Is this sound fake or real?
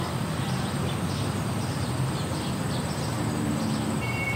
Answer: real